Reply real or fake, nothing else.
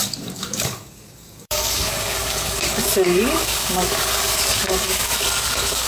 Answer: fake